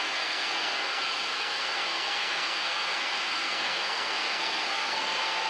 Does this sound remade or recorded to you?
remade